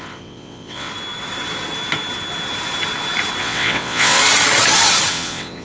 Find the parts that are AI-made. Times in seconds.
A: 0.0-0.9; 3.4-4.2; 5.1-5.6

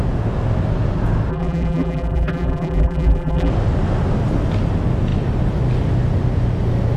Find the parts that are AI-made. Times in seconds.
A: 1.3-3.5